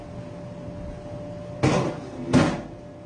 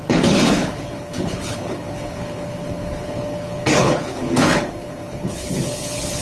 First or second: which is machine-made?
second